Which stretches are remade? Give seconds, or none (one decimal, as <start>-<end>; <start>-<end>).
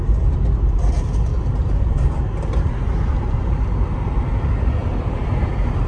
4.8-5.5